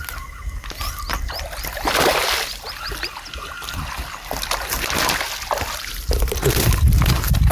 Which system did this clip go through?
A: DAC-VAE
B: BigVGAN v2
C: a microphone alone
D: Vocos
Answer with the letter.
C